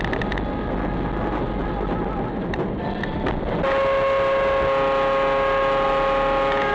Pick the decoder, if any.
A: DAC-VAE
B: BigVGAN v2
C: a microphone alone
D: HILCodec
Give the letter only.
C